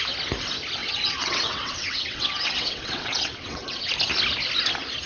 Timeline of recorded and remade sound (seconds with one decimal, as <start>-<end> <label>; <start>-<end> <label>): 0.0-0.8 recorded; 0.8-3.9 remade; 3.9-5.1 recorded